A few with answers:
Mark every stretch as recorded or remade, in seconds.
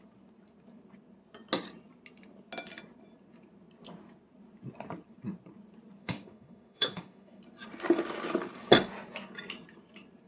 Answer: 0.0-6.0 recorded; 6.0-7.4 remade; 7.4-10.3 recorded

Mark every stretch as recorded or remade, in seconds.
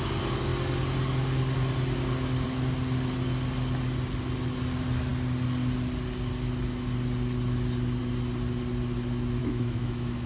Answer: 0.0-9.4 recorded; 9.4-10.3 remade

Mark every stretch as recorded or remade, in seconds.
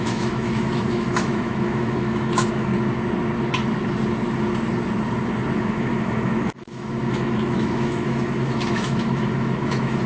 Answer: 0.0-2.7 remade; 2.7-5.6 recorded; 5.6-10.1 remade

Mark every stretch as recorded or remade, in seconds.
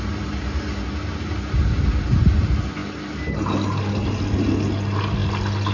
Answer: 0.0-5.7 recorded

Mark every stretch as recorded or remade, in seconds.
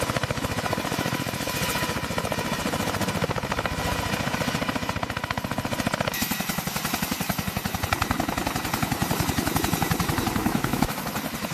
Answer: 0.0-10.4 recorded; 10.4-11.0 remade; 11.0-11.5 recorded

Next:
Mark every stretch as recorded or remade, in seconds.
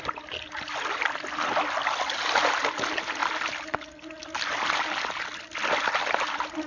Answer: 0.0-6.7 recorded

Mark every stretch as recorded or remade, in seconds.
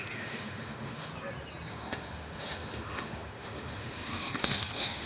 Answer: 0.0-1.1 remade; 1.1-1.7 recorded; 1.7-5.1 remade